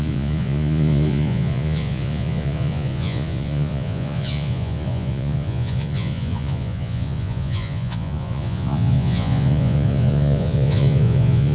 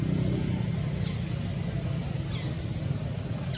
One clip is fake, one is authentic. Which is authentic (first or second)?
second